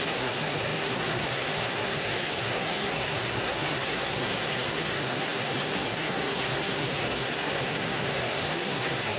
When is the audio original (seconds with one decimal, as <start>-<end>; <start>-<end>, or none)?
none